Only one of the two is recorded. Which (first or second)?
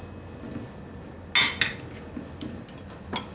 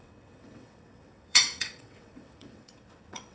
first